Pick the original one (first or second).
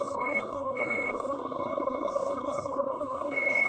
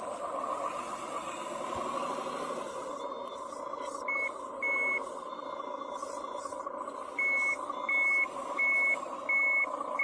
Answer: second